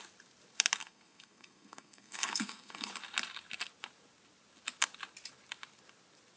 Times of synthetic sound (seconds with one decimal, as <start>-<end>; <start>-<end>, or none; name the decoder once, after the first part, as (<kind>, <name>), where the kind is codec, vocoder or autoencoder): 0.8-2.9 (codec, SNAC)